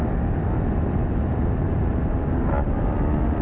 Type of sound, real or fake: fake